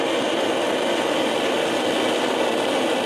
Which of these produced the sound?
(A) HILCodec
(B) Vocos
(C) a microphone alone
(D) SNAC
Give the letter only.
C